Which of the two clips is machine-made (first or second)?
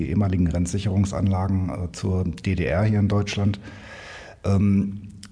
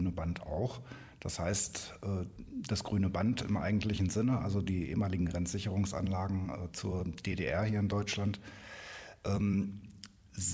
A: second